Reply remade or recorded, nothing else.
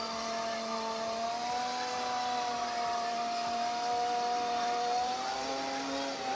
remade